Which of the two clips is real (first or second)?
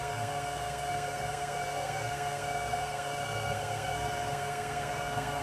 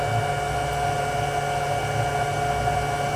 second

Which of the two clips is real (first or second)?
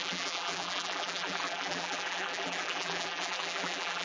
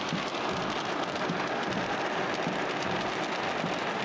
second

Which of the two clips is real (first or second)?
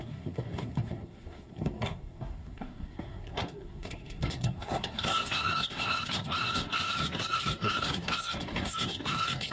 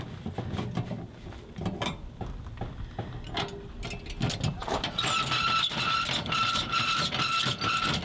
second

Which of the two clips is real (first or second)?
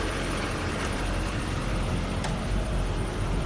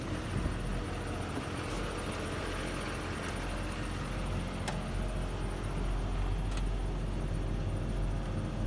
second